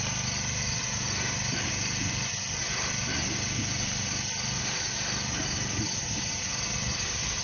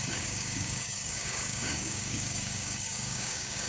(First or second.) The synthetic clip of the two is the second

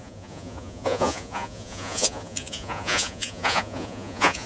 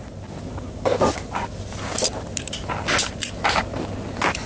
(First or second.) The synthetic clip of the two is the first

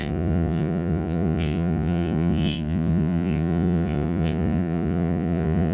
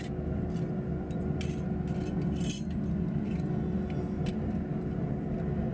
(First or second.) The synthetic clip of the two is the first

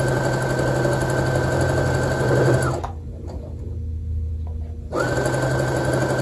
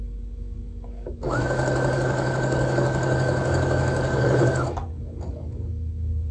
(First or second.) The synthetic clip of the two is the second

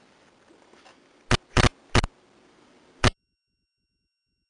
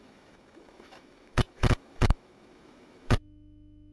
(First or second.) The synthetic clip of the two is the second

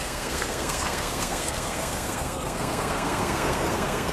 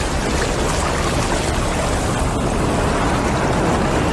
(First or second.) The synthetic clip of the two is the first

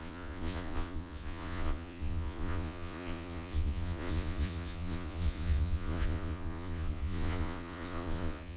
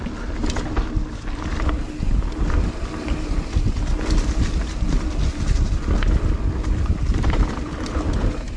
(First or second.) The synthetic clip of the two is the first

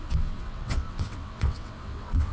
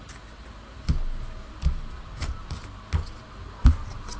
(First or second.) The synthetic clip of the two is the first